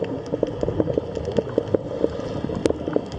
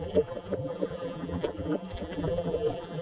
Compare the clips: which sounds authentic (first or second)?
first